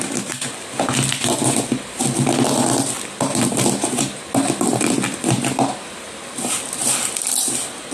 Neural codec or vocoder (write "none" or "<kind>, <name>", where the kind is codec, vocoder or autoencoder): none